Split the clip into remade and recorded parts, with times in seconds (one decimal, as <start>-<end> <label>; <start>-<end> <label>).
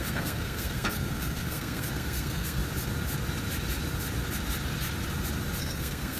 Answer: 0.0-2.6 remade; 2.6-5.6 recorded; 5.6-6.2 remade